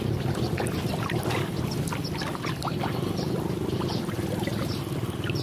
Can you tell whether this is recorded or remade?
recorded